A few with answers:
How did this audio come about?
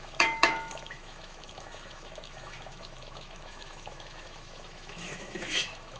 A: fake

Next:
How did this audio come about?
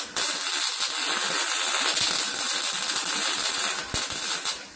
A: real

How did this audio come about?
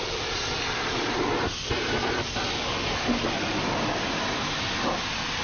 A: real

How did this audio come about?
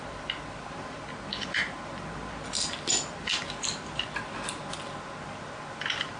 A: real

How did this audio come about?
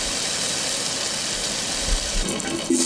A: real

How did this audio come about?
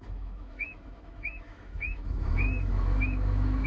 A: fake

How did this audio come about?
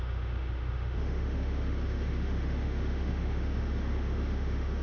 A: fake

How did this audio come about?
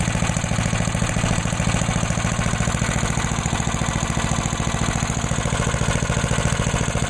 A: real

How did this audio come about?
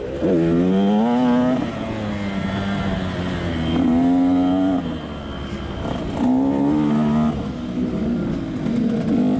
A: real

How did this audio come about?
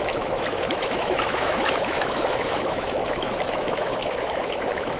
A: fake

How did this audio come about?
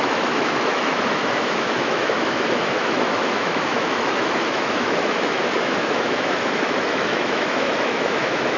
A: fake